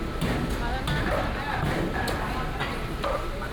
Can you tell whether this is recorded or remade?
recorded